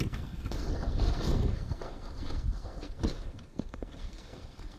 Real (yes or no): no